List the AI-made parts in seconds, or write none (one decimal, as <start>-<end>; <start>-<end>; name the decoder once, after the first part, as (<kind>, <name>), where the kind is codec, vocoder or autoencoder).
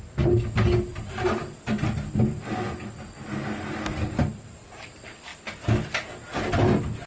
0.9-1.4 (vocoder, BigVGAN v2)